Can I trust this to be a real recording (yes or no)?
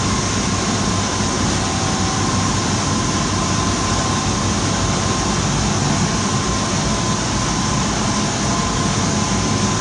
yes